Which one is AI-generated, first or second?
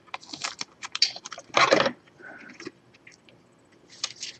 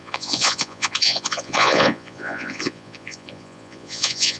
second